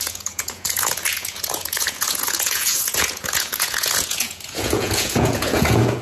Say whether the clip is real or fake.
fake